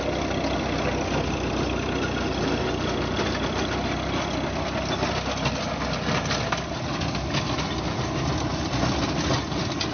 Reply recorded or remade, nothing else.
recorded